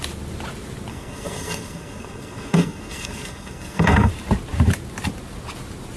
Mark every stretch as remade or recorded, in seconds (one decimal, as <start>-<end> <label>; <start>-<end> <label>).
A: 0.0-0.9 recorded; 0.9-4.1 remade; 4.1-6.0 recorded